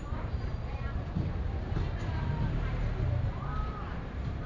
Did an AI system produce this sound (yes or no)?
yes